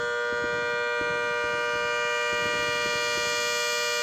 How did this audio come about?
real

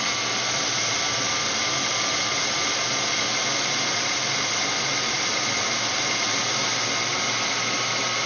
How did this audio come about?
real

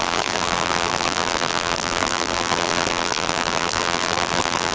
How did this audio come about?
fake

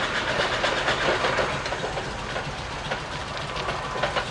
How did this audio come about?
real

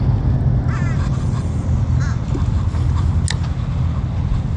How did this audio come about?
real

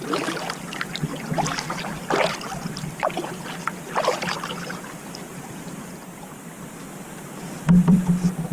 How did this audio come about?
fake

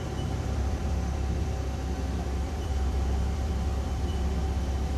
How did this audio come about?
fake